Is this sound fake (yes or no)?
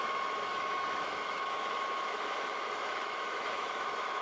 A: yes